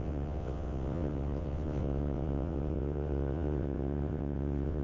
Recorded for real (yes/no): no